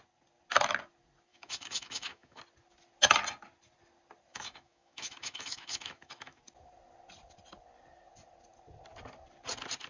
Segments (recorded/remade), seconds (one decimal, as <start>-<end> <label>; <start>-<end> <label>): 0.0-1.3 recorded; 1.3-2.4 remade; 2.4-4.3 recorded; 4.3-6.4 remade; 6.4-9.9 recorded